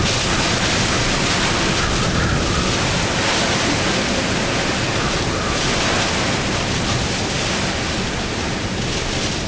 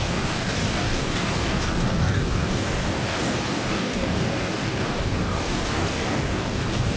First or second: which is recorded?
first